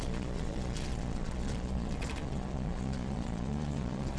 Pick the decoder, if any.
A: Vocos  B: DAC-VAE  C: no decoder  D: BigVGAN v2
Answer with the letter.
A